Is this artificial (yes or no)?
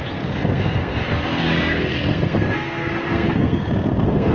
yes